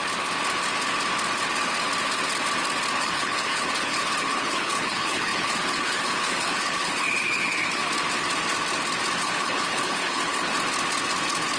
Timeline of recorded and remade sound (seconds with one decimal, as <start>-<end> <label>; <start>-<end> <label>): 0.0-3.0 recorded; 3.0-7.8 remade; 7.8-9.2 recorded; 9.2-10.5 remade; 10.5-11.6 recorded